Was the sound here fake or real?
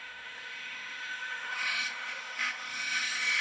fake